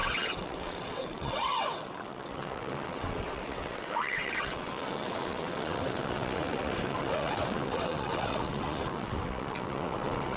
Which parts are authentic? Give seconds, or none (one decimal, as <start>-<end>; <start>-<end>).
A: none